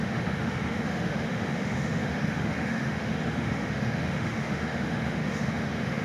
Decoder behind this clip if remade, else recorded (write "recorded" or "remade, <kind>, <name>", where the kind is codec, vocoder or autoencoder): remade, autoencoder, DAC-VAE